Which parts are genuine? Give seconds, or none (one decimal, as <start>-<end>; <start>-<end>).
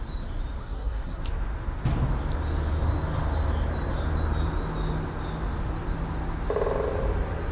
0.0-0.6; 1.2-7.5